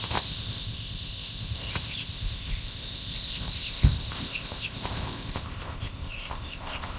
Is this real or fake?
fake